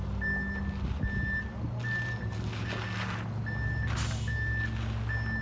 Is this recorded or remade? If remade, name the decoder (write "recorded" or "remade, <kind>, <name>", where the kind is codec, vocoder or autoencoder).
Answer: recorded